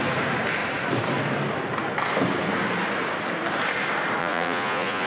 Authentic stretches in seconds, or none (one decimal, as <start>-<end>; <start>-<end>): 0.0-4.2